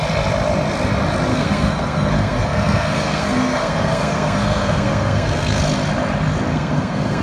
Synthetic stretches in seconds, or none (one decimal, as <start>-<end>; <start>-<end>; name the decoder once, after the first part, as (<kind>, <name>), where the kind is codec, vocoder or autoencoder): 1.3-5.6 (codec, SNAC); 6.5-7.2